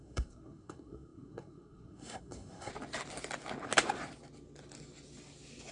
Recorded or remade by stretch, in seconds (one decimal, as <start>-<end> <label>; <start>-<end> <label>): 0.0-2.7 remade; 2.7-5.7 recorded